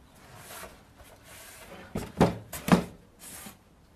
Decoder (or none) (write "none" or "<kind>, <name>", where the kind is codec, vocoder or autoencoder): none